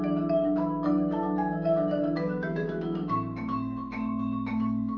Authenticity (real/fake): fake